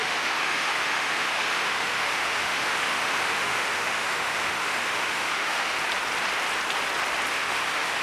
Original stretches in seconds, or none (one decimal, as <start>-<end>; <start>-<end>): 5.7-7.3